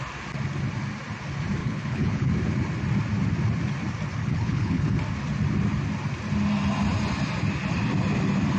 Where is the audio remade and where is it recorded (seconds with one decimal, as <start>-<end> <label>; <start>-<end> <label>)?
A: 0.0-1.6 recorded; 1.6-2.3 remade; 2.3-4.2 recorded; 4.2-5.0 remade; 5.0-8.6 recorded